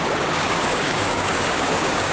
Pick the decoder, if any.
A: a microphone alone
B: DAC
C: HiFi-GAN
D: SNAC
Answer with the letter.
B